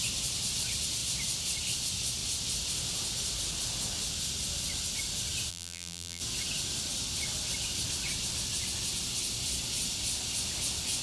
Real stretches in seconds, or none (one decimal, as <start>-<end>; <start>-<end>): 0.0-5.5; 6.2-11.0